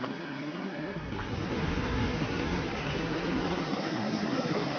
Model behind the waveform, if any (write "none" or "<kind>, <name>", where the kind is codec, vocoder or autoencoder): codec, SNAC